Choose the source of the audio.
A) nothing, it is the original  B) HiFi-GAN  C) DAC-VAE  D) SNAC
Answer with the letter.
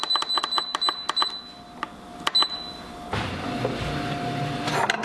A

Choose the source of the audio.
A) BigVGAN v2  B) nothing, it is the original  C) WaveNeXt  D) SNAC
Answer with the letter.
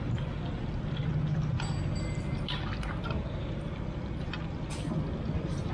B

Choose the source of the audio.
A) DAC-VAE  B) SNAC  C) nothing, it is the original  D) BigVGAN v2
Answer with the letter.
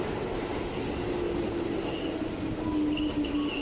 C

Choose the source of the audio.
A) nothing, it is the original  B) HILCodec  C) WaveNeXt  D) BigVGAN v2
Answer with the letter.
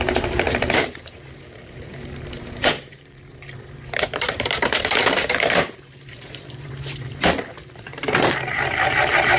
D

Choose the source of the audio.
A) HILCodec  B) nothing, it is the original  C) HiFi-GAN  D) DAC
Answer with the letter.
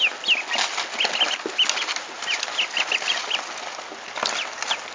B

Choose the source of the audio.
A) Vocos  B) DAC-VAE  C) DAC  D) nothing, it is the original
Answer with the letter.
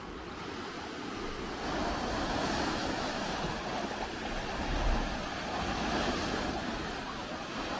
D